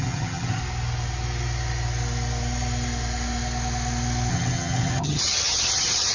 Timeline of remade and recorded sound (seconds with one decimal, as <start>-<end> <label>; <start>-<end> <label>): 0.0-0.6 remade; 0.6-4.3 recorded; 4.3-6.1 remade